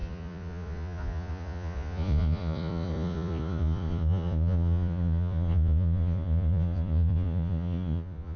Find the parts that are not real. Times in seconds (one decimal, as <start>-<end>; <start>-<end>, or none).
0.0-8.4